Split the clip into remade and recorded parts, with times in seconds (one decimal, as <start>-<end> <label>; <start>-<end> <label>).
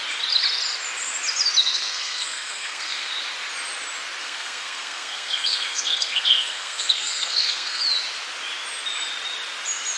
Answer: 0.0-1.6 recorded; 1.6-3.1 remade; 3.1-4.2 recorded; 4.2-7.8 remade; 7.8-10.0 recorded